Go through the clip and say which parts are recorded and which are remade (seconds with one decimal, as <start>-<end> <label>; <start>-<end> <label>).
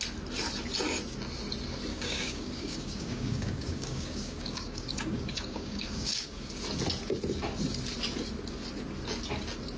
0.0-1.9 recorded; 1.9-6.5 remade; 6.5-9.8 recorded